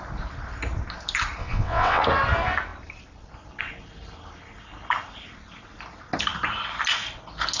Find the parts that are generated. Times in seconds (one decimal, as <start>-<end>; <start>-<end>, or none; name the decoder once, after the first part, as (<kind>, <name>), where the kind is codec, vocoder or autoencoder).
1.4-2.0 (vocoder, WaveNeXt)